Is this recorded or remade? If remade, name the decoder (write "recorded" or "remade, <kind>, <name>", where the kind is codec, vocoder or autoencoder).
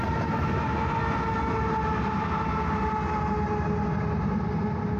recorded